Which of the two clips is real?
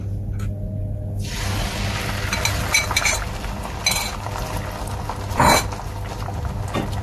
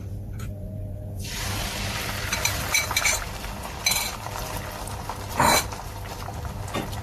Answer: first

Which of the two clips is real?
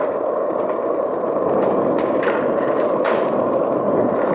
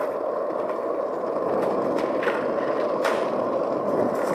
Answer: second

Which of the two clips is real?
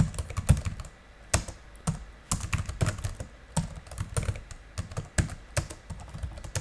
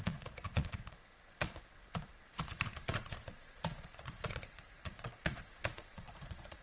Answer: first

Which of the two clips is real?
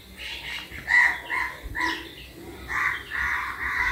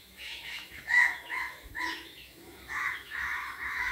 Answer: first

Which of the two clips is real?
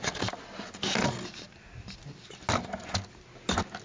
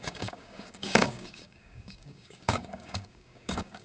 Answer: first